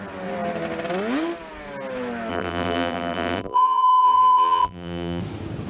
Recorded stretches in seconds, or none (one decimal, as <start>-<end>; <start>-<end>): 0.0-2.3; 5.2-5.7